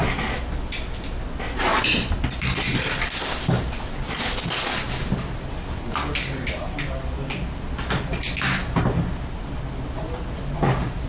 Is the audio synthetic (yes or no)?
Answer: no